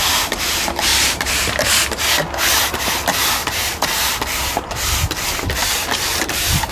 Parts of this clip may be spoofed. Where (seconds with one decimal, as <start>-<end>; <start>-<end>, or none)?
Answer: 0.9-1.7; 3.4-4.8; 5.6-6.7